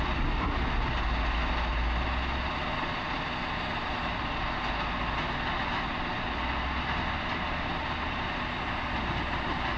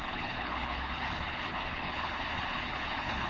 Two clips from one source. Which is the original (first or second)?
first